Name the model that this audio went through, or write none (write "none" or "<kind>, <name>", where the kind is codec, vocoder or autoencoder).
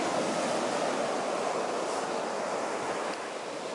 none